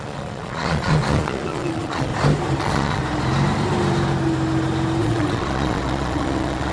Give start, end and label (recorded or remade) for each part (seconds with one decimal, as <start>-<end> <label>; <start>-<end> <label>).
0.0-2.1 remade; 2.1-2.6 recorded; 2.6-3.0 remade; 3.0-5.0 recorded; 5.0-6.7 remade